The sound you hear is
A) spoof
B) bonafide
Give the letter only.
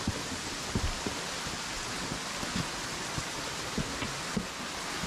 B